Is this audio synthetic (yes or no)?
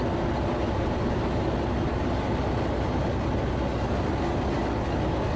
no